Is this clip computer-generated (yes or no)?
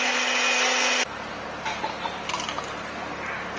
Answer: no